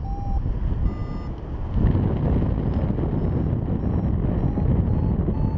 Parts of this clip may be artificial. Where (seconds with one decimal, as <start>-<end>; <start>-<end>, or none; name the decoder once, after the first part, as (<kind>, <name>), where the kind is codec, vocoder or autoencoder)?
none

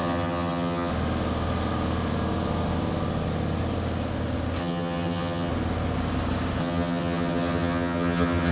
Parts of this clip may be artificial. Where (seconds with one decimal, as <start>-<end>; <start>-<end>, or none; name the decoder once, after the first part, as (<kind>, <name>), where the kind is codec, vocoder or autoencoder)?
0.0-0.9 (vocoder, HiFi-GAN); 4.6-5.5; 6.6-8.5

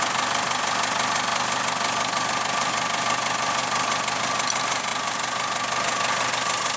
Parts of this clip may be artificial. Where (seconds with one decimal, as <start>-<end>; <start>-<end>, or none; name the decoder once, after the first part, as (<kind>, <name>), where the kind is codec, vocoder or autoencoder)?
none